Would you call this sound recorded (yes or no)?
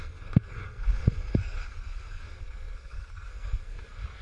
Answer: no